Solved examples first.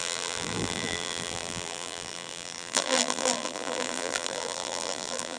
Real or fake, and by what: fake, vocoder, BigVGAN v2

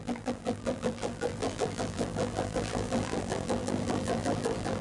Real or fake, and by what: fake, vocoder, BigVGAN v2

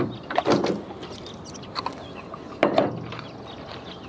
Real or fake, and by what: real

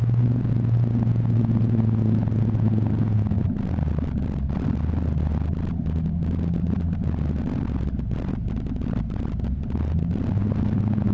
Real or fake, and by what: real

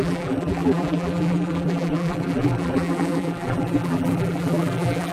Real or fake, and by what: fake, vocoder, BigVGAN v2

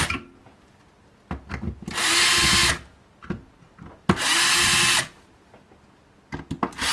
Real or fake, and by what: real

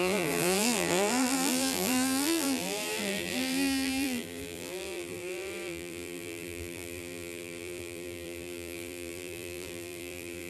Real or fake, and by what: fake, vocoder, BigVGAN v2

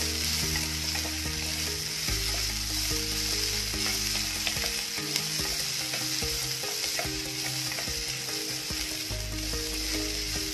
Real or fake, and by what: real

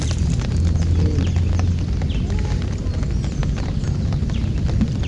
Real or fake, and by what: real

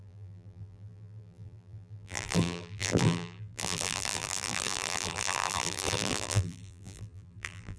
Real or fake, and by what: fake, vocoder, BigVGAN v2